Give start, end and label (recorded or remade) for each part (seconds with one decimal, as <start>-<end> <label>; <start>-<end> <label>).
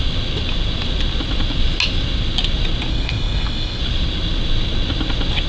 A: 0.0-2.9 recorded; 2.9-3.8 remade; 3.8-5.5 recorded